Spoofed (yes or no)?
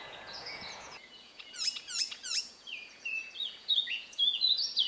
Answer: yes